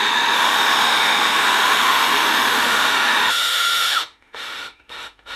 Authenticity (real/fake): fake